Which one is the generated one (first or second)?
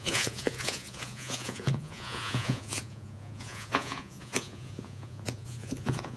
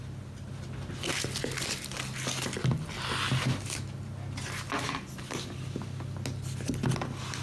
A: first